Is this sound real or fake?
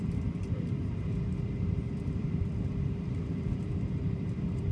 fake